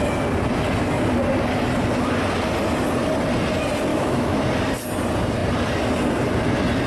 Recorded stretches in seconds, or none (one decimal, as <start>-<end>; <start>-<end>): 0.0-3.9; 4.4-6.9